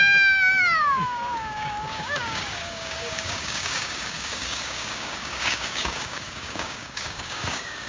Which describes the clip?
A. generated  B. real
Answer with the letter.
A